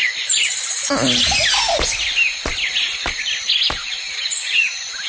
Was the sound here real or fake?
real